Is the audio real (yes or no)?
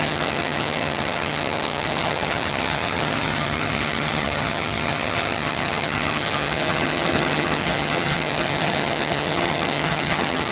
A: no